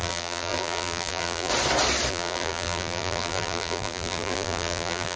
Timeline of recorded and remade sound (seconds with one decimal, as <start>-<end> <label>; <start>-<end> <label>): 0.0-1.5 remade; 1.5-2.1 recorded; 2.1-5.2 remade